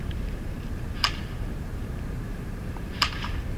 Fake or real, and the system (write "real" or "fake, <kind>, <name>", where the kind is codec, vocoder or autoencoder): fake, vocoder, BigVGAN v2